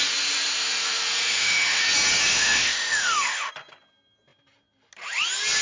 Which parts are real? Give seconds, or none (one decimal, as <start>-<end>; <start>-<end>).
0.0-1.3; 1.8-2.3; 3.5-5.6